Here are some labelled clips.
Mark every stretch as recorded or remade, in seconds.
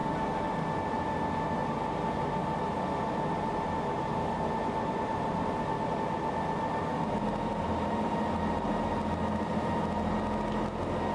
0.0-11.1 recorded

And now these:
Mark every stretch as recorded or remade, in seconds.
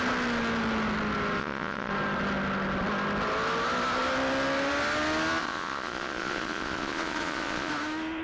0.0-1.4 recorded; 1.4-1.9 remade; 1.9-5.4 recorded; 5.4-7.7 remade; 7.7-8.2 recorded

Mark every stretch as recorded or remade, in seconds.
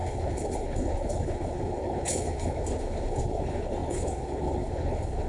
0.0-5.3 remade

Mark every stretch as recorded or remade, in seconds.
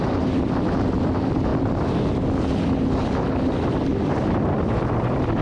0.0-5.4 recorded